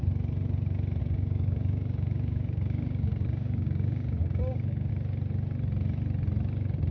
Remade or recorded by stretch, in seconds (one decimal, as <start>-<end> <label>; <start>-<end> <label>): 0.0-1.0 recorded; 1.0-4.9 remade; 4.9-6.9 recorded